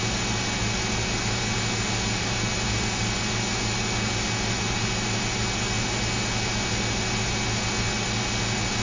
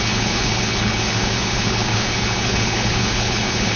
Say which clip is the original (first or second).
first